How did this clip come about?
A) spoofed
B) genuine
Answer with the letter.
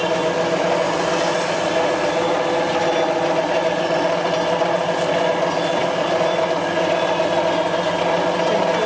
B